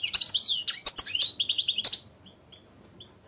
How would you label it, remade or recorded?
recorded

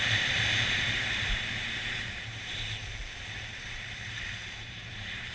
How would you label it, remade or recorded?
remade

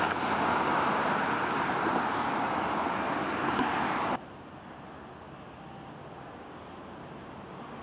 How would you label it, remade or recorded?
recorded